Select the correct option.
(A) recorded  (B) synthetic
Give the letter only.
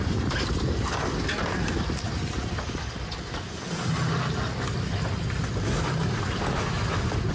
A